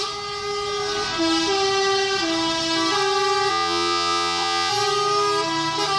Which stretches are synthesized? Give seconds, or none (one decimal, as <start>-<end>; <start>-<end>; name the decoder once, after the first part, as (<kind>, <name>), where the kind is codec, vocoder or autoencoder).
3.5-4.7 (vocoder, Vocos)